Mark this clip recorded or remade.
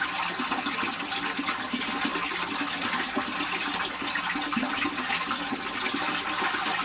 recorded